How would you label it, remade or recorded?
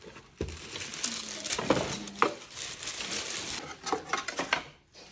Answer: recorded